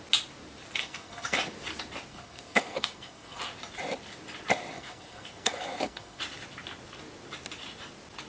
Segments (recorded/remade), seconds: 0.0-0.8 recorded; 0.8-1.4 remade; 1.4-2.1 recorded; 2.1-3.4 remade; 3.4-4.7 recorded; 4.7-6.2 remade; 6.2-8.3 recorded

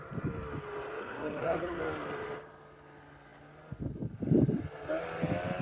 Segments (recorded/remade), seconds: 0.0-1.0 recorded; 1.0-1.8 remade; 1.8-5.6 recorded

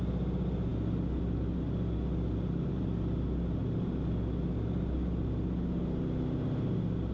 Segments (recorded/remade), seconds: 0.0-7.1 recorded